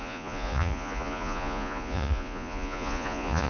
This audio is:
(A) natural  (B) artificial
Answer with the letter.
B